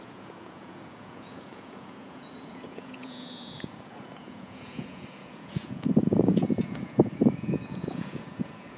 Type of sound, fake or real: fake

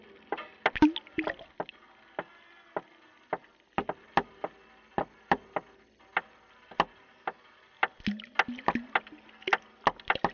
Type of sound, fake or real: real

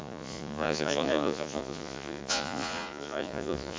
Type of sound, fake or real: fake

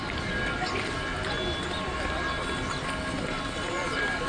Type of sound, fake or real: real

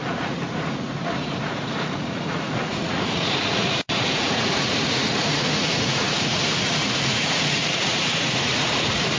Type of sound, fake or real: fake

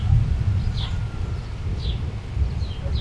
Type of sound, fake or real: real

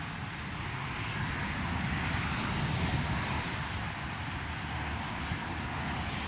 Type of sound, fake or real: real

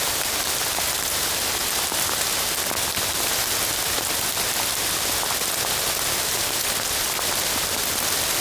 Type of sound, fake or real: real